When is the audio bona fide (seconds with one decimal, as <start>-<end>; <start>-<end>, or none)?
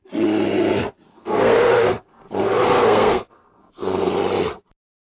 0.0-1.1; 4.1-5.0